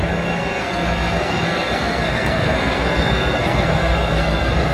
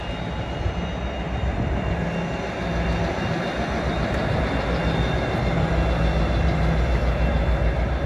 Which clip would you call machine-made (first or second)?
first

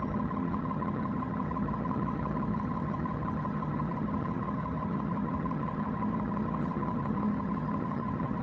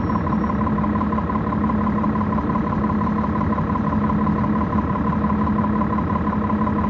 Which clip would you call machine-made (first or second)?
first